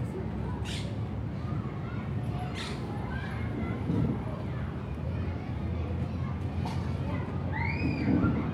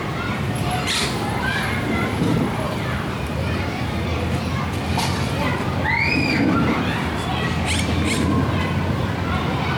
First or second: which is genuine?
first